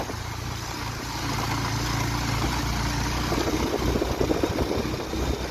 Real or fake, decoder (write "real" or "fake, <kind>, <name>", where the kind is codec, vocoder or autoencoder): real